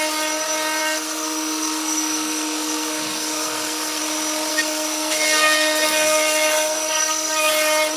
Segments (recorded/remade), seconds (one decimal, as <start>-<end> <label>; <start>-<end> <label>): 0.0-0.8 recorded; 0.8-4.0 remade; 4.0-4.5 recorded; 4.5-7.5 remade; 7.5-8.0 recorded